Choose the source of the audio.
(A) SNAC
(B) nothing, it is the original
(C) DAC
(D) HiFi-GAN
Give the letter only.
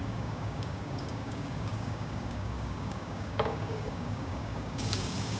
C